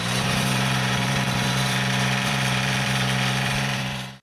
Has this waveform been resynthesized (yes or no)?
yes